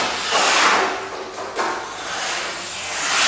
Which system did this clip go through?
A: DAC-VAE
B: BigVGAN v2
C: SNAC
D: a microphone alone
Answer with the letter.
D